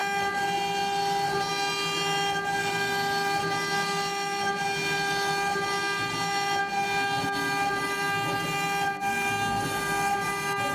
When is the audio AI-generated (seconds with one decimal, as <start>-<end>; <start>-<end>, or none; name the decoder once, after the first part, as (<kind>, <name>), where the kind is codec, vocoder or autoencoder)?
none